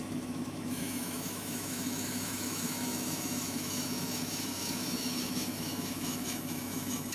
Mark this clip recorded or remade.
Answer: remade